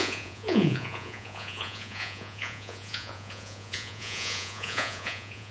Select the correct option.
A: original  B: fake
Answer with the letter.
B